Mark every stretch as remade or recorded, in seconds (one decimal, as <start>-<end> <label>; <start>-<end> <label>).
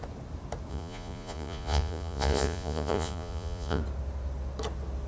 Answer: 0.0-0.7 recorded; 0.7-3.8 remade; 3.8-5.1 recorded